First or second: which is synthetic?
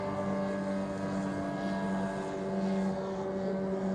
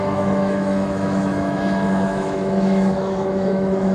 second